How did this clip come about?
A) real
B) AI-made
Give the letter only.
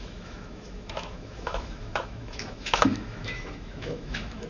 B